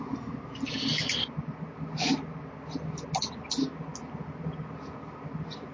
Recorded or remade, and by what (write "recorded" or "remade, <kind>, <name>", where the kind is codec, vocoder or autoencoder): recorded